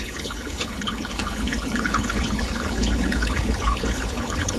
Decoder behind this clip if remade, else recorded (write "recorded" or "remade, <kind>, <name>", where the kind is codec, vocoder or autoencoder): remade, codec, HILCodec